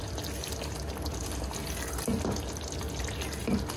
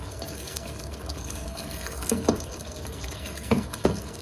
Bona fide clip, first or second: first